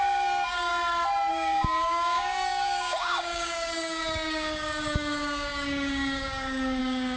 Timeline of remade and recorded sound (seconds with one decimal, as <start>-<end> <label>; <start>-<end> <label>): 0.0-0.7 remade; 0.7-1.3 recorded; 1.3-7.2 remade